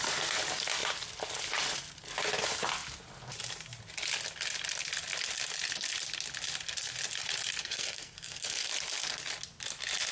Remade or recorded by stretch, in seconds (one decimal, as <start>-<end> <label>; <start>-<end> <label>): 0.0-7.6 recorded; 7.6-8.7 remade; 8.7-10.1 recorded